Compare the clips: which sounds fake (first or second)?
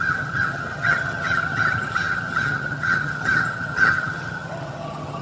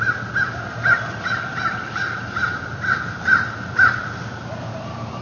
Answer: first